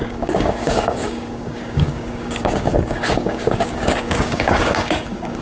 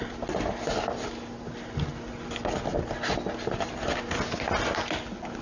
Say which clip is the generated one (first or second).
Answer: first